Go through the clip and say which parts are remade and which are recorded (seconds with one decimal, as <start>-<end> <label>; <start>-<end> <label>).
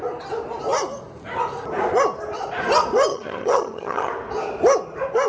0.0-3.1 recorded; 3.1-4.1 remade; 4.1-5.3 recorded